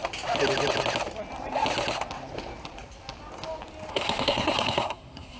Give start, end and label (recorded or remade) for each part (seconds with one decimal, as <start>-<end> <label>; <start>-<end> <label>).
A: 0.0-3.9 recorded; 3.9-5.4 remade